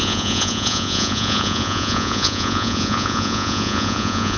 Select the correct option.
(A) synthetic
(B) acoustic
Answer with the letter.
A